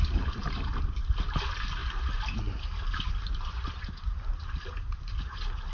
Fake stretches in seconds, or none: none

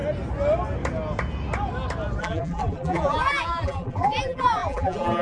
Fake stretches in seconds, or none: 2.2-5.2 (vocoder, BigVGAN v2)

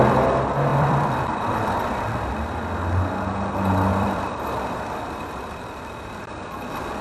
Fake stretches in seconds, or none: 0.7-2.3 (vocoder, BigVGAN v2); 3.9-6.5

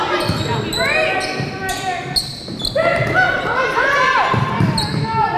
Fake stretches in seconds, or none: none